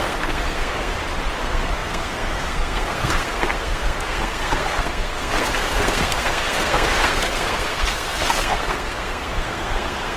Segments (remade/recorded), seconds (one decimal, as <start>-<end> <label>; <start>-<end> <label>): 0.0-0.9 remade; 0.9-1.4 recorded; 1.4-10.2 remade